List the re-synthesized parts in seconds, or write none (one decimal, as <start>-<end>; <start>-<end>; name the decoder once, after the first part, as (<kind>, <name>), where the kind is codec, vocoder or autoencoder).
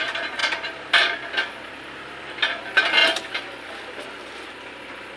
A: none